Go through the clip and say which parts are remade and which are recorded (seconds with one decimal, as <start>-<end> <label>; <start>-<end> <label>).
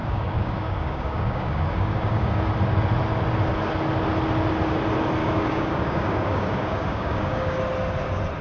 0.0-2.5 remade; 2.5-5.2 recorded; 5.2-7.6 remade; 7.6-8.4 recorded